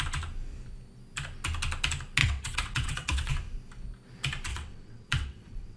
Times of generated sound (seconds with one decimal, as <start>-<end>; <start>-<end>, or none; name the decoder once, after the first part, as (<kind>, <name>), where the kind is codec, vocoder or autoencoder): 2.2-3.3 (vocoder, WaveNeXt); 4.5-5.8